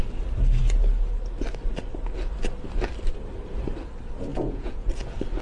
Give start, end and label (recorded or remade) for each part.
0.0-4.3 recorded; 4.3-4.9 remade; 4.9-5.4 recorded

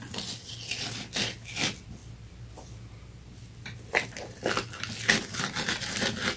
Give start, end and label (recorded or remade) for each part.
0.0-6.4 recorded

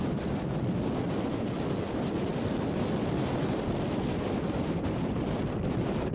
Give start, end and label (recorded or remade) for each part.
0.0-6.1 recorded

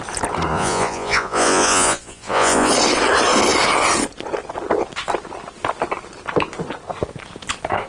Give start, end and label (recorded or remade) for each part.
0.0-0.5 recorded; 0.5-2.7 remade; 2.7-7.9 recorded

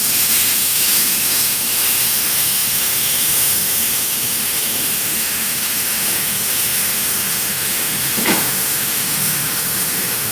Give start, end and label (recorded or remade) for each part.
0.0-10.3 remade

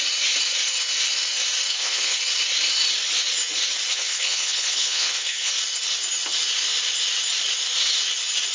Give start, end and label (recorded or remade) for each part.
0.0-1.7 recorded; 1.7-2.2 remade; 2.2-3.9 recorded; 3.9-5.5 remade; 5.5-8.5 recorded

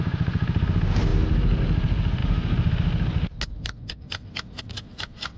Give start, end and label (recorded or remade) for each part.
0.0-5.4 recorded